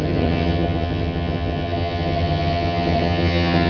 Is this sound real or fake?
fake